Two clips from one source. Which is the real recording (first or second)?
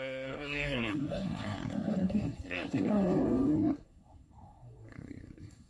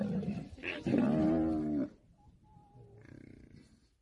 second